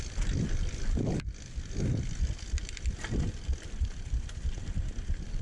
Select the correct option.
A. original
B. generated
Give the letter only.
A